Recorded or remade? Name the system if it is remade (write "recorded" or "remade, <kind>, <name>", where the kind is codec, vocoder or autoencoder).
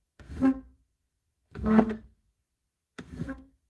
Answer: remade, codec, SNAC